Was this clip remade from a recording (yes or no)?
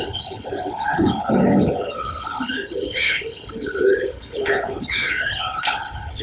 yes